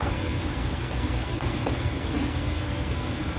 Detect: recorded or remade remade